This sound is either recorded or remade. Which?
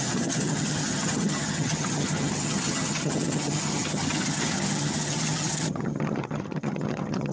remade